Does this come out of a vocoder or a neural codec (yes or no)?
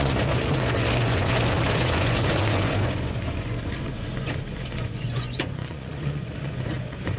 yes